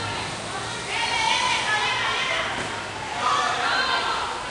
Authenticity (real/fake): real